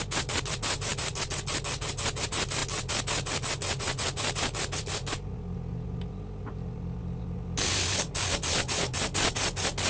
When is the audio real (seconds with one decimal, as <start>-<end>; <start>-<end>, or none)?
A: 0.0-9.9